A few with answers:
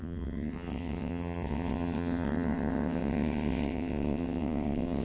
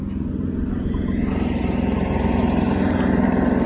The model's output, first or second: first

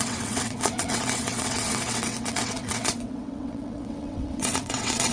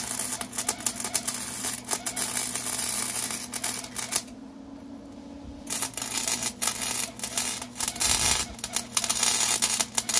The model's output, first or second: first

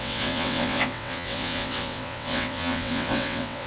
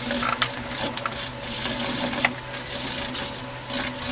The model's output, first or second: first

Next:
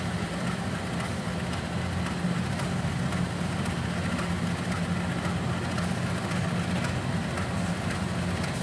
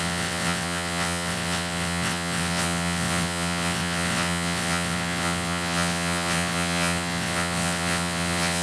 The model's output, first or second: second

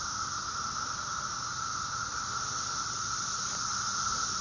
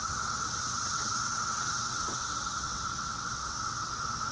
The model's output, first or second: second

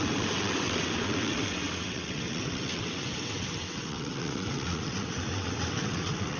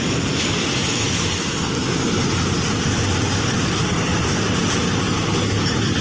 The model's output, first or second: first